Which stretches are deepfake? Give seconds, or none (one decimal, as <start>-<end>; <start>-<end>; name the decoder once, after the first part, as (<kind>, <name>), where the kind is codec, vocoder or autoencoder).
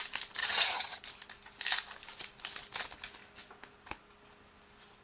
0.4-1.0 (vocoder, HiFi-GAN)